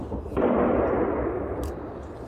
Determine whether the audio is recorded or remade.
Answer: recorded